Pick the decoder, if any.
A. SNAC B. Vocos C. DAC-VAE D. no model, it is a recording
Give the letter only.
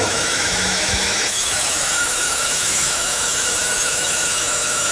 C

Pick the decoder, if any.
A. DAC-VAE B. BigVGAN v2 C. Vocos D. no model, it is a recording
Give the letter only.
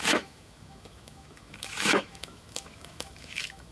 A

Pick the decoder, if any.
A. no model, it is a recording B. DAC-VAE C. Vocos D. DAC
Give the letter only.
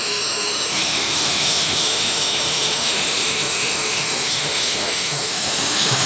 B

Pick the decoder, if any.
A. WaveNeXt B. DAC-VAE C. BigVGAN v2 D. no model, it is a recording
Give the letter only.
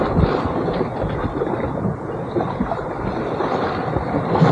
D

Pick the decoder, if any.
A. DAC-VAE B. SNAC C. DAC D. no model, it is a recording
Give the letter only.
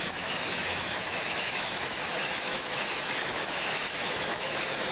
A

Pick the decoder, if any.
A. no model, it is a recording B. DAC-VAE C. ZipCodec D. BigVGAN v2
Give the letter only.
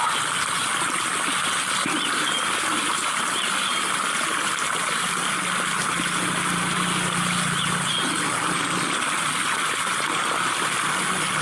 A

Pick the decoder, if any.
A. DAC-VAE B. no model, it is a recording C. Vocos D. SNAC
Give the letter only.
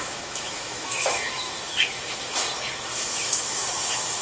A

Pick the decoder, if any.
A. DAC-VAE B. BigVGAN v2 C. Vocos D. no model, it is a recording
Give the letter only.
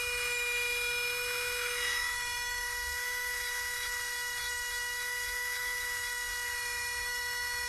A